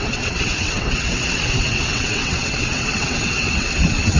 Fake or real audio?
fake